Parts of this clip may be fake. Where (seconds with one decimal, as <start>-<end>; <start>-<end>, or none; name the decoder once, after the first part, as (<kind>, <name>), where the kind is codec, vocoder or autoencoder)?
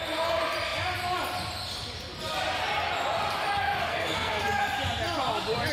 3.9-4.4 (codec, SNAC)